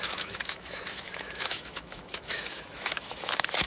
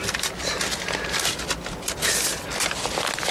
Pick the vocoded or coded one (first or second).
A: first